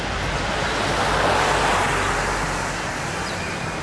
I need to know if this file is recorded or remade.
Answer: recorded